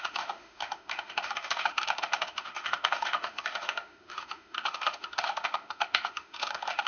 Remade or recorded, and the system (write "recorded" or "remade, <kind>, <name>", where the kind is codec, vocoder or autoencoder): remade, autoencoder, DAC-VAE